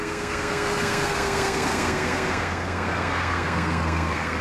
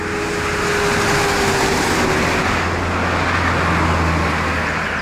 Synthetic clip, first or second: first